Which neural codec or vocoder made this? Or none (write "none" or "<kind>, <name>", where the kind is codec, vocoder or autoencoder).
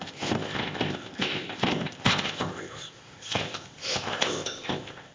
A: codec, ZipCodec